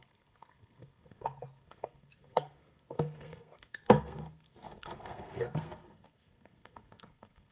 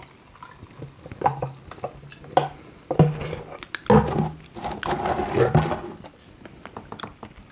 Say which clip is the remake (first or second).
first